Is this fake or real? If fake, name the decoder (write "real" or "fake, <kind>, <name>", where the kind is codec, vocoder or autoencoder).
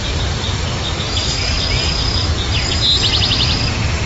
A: real